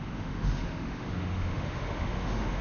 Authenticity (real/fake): fake